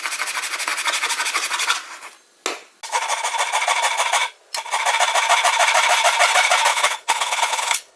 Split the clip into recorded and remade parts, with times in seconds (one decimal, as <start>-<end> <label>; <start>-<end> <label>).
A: 0.0-6.7 recorded; 6.7-8.0 remade